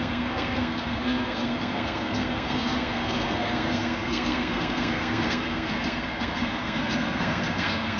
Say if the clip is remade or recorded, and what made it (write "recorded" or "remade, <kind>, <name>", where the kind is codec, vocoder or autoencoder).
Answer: remade, codec, SNAC